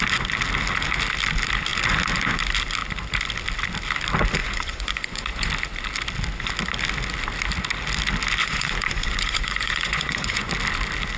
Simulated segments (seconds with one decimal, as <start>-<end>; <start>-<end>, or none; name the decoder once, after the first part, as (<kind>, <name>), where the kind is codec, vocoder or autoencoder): 4.4-5.5 (vocoder, Vocos); 8.4-10.5